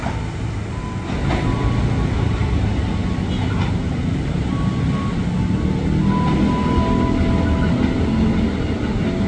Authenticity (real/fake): real